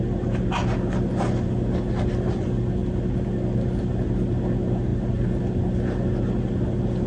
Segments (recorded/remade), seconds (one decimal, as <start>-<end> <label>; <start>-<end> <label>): 0.0-7.1 recorded